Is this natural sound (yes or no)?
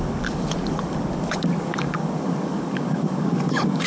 no